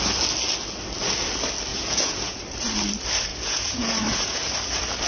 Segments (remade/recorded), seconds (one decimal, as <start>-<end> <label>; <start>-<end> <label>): 0.0-1.7 recorded; 1.7-2.4 remade; 2.4-3.3 recorded; 3.3-4.5 remade; 4.5-5.1 recorded